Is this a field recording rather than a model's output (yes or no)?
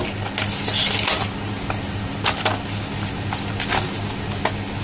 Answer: yes